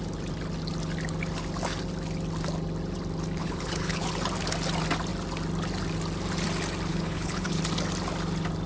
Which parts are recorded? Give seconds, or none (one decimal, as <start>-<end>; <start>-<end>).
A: 0.0-3.4; 4.1-6.9; 7.6-8.7